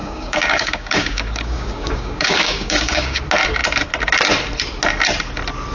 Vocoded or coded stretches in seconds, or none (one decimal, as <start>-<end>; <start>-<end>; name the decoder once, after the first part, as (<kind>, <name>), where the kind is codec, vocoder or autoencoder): 0.0-3.2 (codec, DAC)